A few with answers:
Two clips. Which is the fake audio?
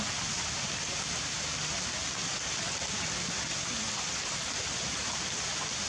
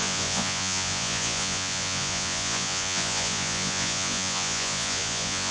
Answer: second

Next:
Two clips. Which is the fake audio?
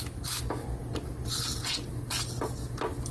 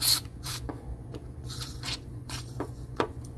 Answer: second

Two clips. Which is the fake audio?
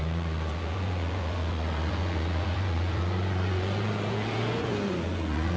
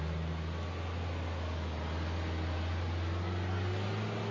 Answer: first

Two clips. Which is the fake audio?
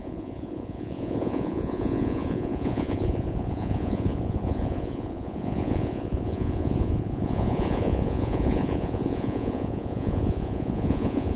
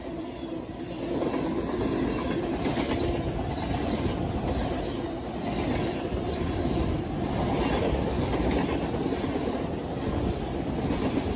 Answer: first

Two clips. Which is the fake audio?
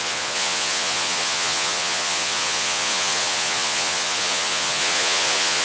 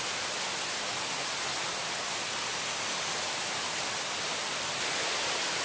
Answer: first